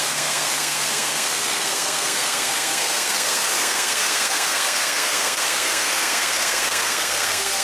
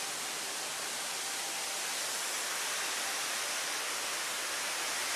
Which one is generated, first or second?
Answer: first